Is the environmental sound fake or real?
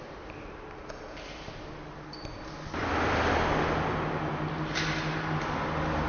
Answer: real